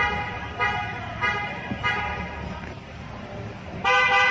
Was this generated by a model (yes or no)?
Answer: yes